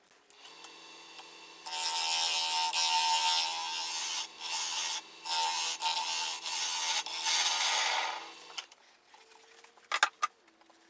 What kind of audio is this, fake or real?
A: real